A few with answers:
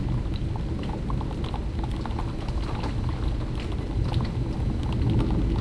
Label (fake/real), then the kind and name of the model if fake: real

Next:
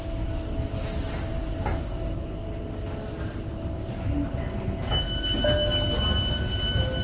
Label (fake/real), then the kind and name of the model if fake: real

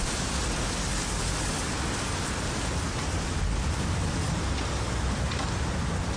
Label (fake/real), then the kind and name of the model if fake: real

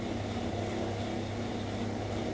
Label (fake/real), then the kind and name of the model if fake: real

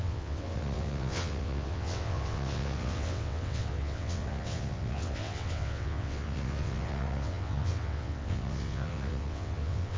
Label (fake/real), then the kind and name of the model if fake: fake, vocoder, WaveNeXt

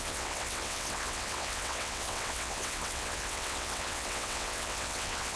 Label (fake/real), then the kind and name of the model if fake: fake, vocoder, WaveNeXt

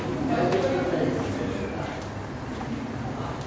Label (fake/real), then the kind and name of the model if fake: real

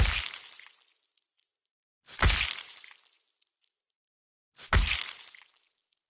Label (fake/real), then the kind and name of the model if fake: real